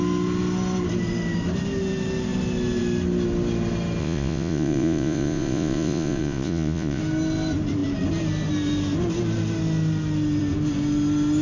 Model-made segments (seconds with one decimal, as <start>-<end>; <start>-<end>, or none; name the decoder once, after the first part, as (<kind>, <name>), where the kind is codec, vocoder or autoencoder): 4.0-7.0 (vocoder, Vocos)